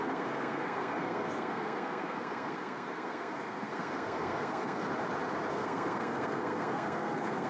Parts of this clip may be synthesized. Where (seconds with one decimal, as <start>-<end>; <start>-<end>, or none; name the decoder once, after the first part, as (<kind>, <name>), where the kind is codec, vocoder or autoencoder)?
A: 0.0-4.9 (codec, SNAC); 5.5-7.5